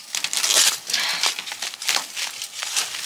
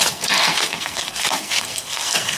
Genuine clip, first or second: first